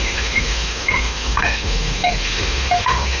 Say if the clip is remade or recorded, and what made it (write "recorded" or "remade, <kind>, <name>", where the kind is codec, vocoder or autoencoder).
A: remade, autoencoder, DAC-VAE